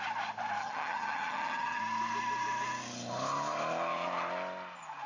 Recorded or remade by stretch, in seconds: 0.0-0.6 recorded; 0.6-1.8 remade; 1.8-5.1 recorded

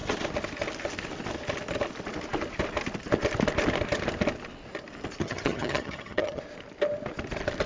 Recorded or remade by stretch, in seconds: 0.0-5.2 recorded; 5.2-6.4 remade; 6.4-7.7 recorded

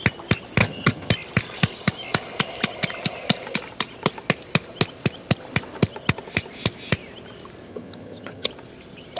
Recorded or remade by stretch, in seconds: 0.0-0.6 recorded; 0.6-1.1 remade; 1.1-7.7 recorded; 7.7-8.5 remade; 8.5-9.2 recorded

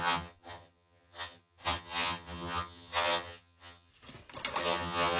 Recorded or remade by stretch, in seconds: 0.0-3.9 remade; 3.9-4.6 recorded; 4.6-5.2 remade

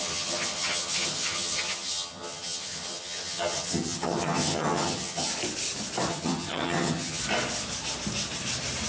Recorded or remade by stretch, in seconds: 0.0-5.3 remade; 5.3-6.1 recorded; 6.1-7.2 remade; 7.2-8.9 recorded